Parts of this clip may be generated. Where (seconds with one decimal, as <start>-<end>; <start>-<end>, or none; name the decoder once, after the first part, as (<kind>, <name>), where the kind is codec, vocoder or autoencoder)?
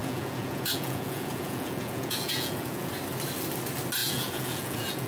0.0-2.9 (vocoder, Vocos); 4.0-5.1